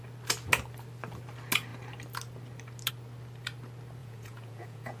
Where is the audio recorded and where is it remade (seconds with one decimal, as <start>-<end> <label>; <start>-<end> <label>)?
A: 0.0-4.0 recorded; 4.0-5.0 remade